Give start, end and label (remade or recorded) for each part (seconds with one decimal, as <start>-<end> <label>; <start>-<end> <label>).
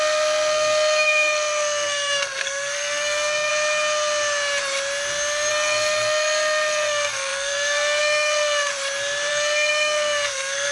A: 0.0-3.5 remade; 3.5-5.5 recorded; 5.5-8.7 remade; 8.7-9.3 recorded; 9.3-10.7 remade